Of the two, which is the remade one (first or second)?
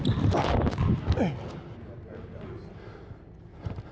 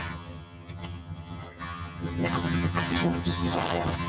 second